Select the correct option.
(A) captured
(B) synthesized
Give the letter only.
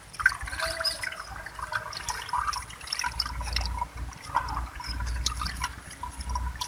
B